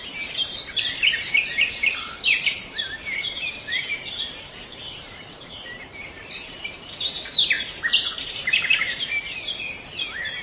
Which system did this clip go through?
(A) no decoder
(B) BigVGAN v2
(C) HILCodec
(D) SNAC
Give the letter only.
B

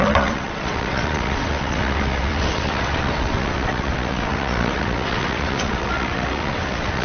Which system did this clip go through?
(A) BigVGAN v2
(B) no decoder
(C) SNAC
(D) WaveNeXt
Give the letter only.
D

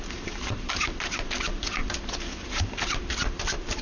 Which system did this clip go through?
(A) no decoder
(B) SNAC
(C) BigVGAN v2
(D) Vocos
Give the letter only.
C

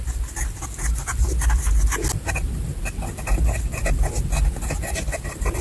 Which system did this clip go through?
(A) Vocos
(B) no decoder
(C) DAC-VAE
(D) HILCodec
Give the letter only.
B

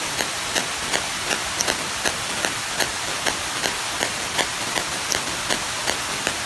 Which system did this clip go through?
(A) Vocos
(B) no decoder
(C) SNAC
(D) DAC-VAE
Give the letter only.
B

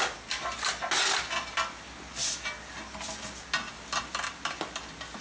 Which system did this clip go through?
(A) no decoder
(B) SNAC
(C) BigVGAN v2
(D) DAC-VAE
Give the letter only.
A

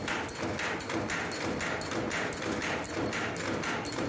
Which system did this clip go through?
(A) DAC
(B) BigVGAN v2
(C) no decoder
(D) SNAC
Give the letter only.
C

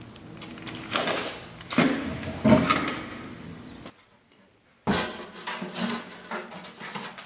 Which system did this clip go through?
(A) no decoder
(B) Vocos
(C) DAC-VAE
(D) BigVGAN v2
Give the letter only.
A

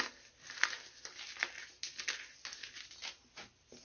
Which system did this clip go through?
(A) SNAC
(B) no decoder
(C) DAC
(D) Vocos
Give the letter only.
B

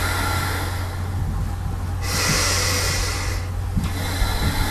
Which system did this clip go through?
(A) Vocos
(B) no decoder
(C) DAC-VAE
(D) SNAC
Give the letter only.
B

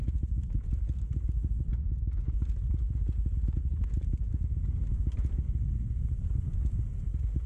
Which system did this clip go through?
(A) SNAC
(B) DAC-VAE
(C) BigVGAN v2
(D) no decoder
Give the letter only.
D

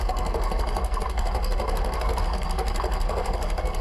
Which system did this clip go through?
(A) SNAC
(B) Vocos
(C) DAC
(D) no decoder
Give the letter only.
A